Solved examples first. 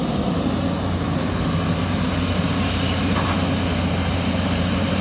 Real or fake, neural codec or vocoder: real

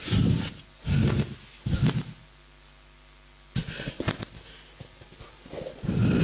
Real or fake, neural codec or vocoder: real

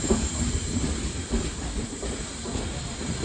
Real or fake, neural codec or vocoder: real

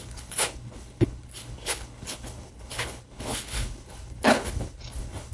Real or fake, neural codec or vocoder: fake, codec, HILCodec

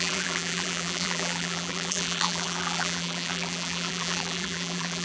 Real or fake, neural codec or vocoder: fake, vocoder, BigVGAN v2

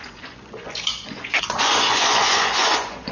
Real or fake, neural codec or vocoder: fake, vocoder, Vocos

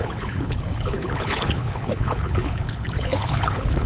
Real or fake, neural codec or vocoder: fake, codec, HILCodec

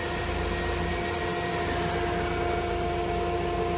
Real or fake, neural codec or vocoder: real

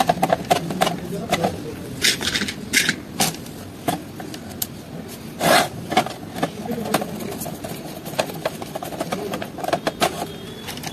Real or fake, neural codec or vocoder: real